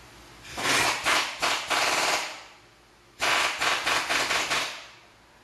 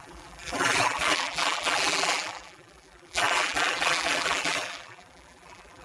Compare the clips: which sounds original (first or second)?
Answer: first